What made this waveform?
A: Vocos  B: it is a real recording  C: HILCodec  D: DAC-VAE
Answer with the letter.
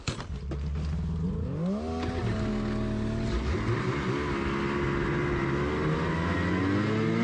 B